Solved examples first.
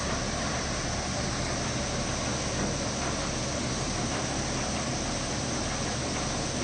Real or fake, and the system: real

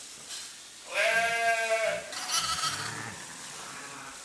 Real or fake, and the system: real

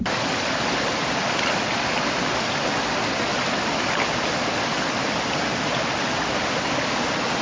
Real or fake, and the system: real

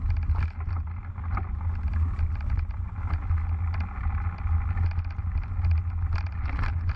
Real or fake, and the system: real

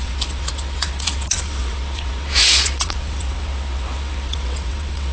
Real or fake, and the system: fake, vocoder, WaveNeXt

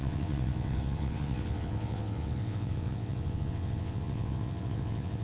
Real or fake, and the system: fake, vocoder, WaveNeXt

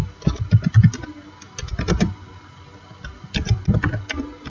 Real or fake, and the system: real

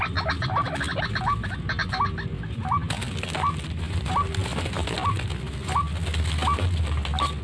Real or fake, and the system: real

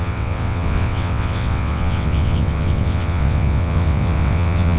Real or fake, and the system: fake, vocoder, WaveNeXt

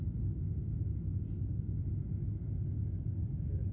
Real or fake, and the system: real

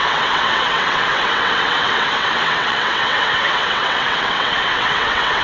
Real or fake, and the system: fake, vocoder, WaveNeXt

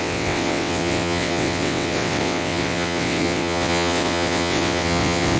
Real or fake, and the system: fake, vocoder, WaveNeXt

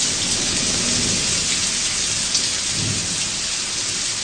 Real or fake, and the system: real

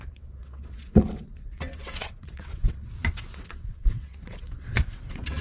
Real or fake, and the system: fake, vocoder, WaveNeXt